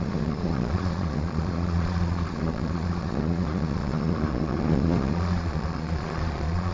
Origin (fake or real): fake